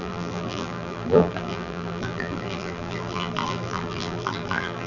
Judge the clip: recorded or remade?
remade